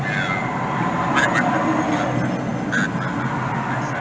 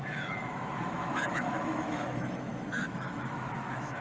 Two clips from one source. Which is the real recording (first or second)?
first